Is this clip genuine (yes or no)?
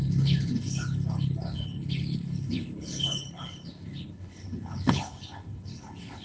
no